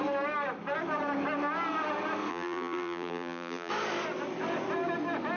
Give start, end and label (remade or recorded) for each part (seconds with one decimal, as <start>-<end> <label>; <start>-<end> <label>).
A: 0.0-2.3 recorded; 2.3-3.7 remade; 3.7-5.4 recorded